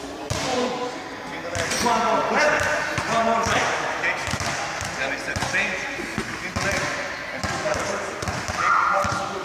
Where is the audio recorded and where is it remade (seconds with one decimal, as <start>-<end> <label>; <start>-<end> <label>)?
0.0-9.4 recorded